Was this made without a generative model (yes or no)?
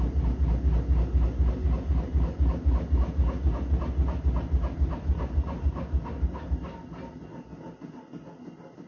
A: yes